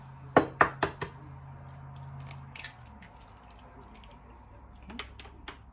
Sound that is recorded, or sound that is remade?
recorded